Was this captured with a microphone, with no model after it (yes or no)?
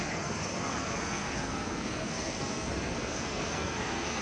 no